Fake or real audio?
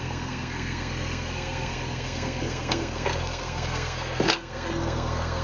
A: fake